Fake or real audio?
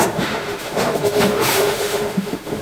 fake